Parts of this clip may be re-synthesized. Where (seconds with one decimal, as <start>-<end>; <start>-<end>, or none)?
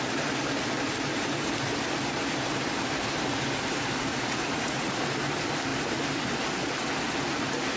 4.1-4.9